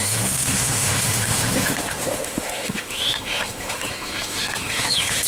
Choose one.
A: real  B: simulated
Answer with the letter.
B